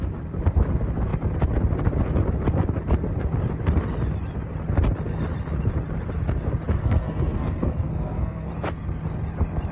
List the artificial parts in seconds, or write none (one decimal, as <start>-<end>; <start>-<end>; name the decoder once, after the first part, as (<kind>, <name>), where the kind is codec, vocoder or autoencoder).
6.8-8.5 (codec, SNAC)